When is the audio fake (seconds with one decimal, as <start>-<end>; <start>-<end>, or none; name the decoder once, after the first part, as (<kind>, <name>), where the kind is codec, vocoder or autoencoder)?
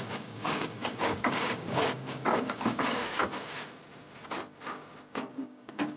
0.0-3.0 (codec, DAC); 5.3-6.0